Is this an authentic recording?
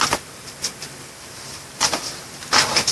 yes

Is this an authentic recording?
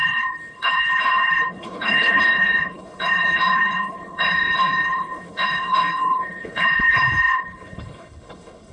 no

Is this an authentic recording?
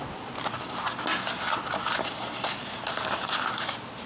yes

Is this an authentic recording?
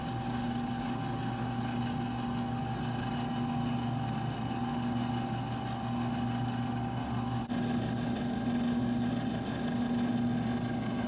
yes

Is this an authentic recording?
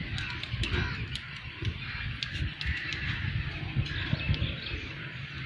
yes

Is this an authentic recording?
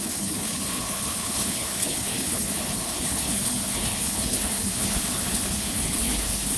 no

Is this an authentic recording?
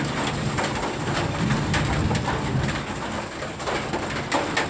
yes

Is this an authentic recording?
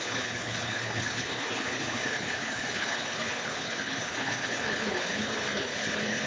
no